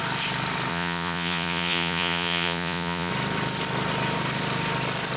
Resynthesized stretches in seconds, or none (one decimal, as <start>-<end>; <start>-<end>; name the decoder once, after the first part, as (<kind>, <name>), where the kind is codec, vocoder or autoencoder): 0.7-3.1 (vocoder, Vocos)